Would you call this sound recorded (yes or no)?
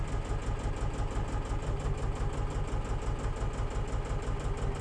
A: yes